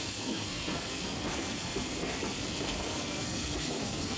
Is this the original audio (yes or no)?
no